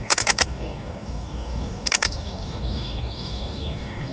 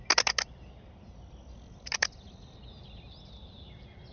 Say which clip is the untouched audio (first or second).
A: second